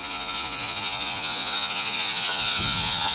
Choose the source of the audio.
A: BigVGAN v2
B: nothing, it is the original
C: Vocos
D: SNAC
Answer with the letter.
C